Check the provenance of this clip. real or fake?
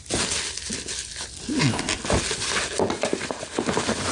real